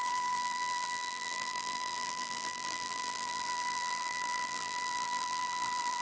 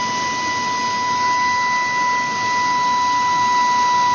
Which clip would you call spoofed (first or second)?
first